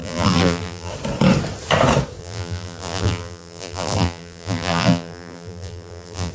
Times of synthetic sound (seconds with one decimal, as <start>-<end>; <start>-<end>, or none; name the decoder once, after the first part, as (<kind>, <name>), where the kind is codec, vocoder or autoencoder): 0.0-0.9 (vocoder, BigVGAN v2); 2.2-6.3